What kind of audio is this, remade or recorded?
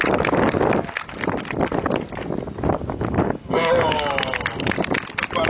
recorded